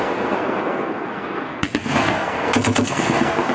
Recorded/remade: remade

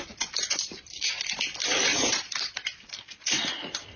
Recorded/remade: remade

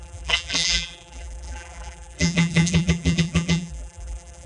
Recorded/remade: remade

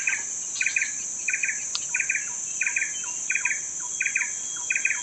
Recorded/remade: recorded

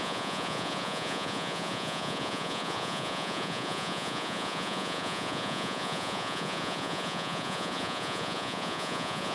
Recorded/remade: remade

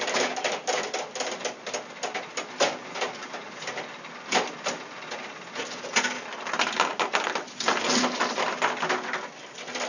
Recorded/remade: recorded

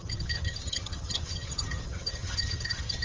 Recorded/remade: remade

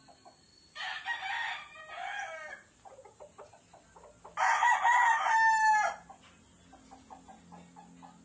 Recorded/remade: recorded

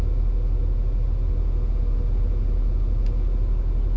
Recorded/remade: recorded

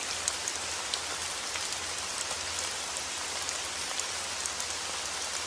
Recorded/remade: recorded